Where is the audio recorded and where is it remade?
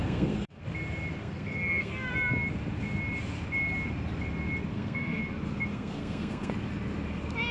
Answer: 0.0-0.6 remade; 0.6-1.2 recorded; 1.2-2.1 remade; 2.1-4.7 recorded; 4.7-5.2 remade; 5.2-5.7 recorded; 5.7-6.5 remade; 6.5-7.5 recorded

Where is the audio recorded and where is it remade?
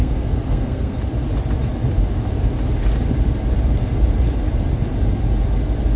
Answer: 0.0-1.0 remade; 1.0-6.0 recorded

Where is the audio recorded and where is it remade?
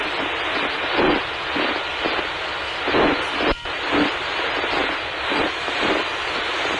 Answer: 0.0-6.8 recorded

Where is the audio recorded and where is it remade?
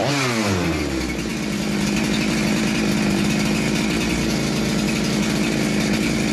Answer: 0.0-6.3 recorded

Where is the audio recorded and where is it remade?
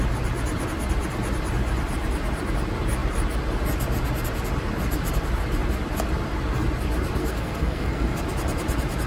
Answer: 0.0-7.2 recorded; 7.2-8.2 remade; 8.2-9.1 recorded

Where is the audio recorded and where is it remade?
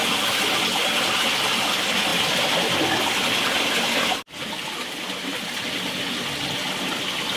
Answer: 0.0-7.4 recorded